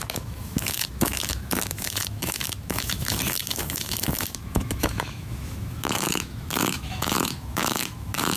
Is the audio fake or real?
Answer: fake